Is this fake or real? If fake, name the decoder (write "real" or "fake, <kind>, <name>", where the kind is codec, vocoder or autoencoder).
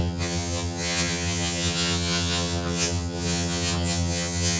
fake, vocoder, HiFi-GAN